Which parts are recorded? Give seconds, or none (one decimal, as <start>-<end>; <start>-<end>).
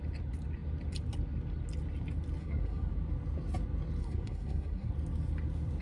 0.0-2.4; 2.9-4.0; 4.9-5.8